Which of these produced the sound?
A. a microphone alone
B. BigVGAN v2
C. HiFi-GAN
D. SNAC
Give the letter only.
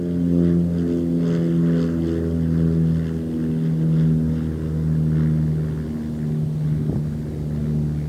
A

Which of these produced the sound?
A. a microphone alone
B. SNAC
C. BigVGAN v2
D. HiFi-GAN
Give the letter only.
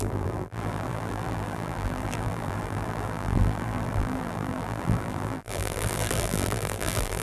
C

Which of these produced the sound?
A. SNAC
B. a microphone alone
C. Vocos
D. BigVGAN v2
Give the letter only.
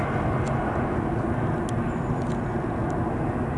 B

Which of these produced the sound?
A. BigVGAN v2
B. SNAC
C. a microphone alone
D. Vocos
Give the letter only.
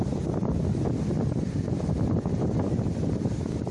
A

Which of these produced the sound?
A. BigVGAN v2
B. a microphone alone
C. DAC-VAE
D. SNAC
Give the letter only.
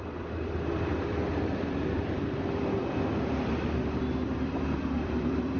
A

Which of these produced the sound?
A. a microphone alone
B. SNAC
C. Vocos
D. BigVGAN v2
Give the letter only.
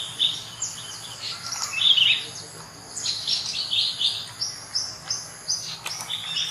A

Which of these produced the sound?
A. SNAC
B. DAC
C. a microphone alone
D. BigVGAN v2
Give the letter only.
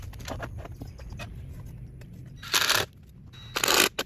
C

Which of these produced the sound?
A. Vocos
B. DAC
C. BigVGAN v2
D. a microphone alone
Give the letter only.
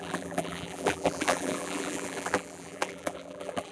C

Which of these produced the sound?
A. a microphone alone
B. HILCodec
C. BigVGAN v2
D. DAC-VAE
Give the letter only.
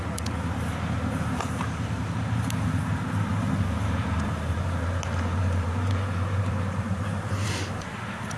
C